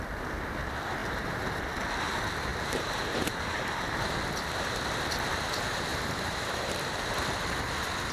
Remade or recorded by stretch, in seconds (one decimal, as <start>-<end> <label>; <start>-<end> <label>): 0.0-1.0 recorded; 1.0-1.6 remade; 1.6-2.5 recorded; 2.5-3.9 remade; 3.9-5.9 recorded; 5.9-6.9 remade; 6.9-8.1 recorded